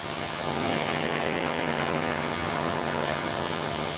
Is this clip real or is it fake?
fake